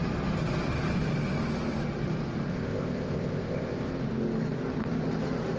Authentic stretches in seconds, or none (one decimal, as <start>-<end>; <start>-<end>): 0.0-2.5; 3.9-5.6